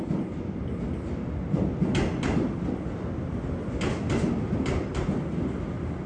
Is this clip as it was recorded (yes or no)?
yes